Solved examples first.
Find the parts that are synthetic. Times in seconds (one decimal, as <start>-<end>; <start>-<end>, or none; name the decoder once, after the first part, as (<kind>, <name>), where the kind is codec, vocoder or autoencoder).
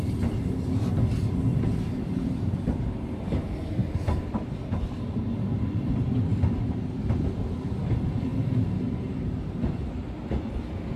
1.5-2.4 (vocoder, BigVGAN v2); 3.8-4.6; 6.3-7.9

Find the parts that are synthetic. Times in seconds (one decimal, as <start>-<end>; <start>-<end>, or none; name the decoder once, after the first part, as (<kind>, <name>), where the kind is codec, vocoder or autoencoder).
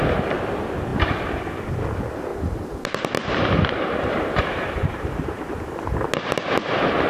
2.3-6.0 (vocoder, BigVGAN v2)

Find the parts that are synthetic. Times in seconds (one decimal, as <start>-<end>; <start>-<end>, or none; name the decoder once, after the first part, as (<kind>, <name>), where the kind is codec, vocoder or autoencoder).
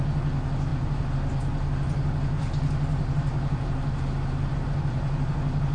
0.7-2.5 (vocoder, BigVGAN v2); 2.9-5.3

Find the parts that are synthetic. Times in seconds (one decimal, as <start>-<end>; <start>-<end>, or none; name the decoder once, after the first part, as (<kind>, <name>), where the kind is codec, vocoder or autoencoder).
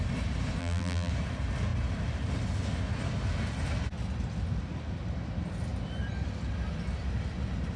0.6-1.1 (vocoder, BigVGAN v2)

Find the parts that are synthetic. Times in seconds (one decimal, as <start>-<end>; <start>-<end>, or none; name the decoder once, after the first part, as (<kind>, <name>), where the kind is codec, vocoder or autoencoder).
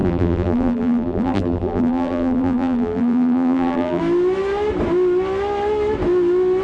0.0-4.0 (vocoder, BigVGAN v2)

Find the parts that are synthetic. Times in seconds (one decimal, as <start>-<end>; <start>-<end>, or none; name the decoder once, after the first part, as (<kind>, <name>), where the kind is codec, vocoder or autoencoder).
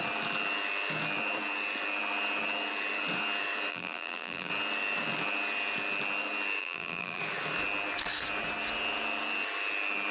3.7-4.5 (vocoder, BigVGAN v2); 6.6-7.2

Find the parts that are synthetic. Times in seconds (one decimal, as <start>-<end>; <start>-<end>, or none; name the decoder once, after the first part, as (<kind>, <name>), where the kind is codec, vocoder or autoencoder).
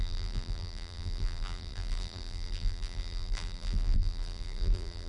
0.0-5.1 (vocoder, BigVGAN v2)